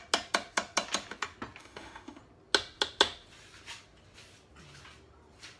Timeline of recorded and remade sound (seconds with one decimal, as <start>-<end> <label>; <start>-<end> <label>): 0.0-1.6 recorded; 1.6-2.2 remade; 2.2-5.6 recorded